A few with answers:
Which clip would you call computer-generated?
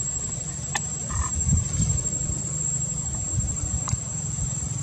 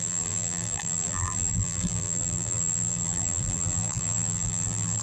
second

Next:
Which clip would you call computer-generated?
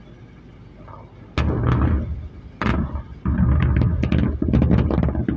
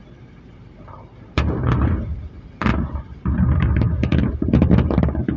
second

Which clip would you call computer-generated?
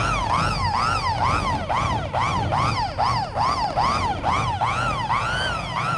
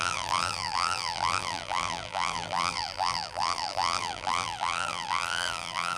second